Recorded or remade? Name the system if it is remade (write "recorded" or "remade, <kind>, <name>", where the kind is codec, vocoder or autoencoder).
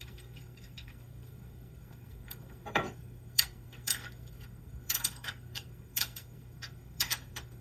remade, codec, SNAC